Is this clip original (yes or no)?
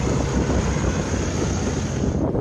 no